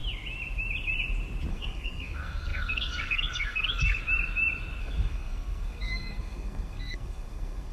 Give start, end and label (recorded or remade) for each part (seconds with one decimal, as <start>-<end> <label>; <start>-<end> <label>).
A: 0.0-1.5 recorded; 1.5-4.0 remade; 4.0-4.8 recorded; 4.8-7.7 remade